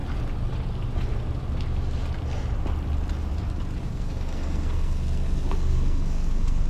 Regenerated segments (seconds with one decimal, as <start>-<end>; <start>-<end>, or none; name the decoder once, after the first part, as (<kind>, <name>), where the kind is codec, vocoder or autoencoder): 3.8-6.7 (codec, SNAC)